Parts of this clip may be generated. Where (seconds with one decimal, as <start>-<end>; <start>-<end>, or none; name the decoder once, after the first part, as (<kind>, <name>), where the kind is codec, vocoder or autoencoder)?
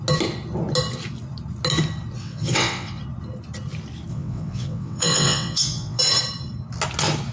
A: 2.2-3.0 (vocoder, WaveNeXt); 4.1-6.0